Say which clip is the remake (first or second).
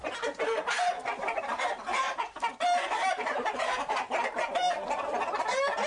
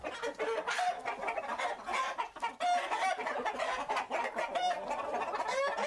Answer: first